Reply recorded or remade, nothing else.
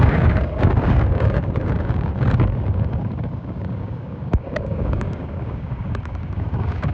remade